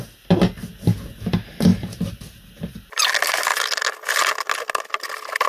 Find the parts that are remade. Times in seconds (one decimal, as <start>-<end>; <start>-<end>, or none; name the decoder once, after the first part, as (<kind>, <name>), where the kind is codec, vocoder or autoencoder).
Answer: 1.7-3.1 (vocoder, BigVGAN v2)